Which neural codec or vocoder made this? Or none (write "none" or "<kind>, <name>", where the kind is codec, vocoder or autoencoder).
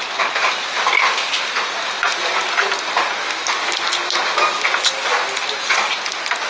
none